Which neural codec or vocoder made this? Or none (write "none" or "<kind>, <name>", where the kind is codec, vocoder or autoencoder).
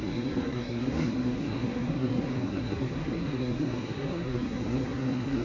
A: codec, SNAC